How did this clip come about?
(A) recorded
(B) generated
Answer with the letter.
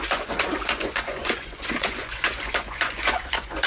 B